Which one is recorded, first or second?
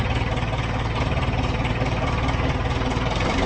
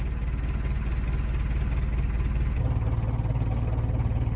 second